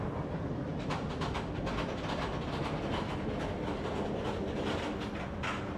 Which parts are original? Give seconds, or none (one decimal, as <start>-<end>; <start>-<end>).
0.0-5.8